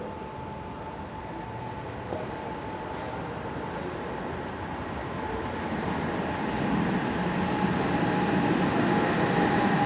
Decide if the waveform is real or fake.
real